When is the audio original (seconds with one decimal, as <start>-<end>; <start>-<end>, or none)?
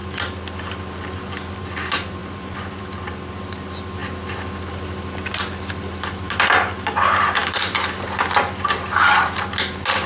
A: 0.0-2.2; 3.3-10.1